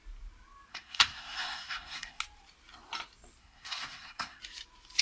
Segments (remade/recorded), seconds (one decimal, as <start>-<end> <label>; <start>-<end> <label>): 0.0-0.7 recorded; 0.7-2.2 remade; 2.2-3.4 recorded; 3.4-4.4 remade; 4.4-5.0 recorded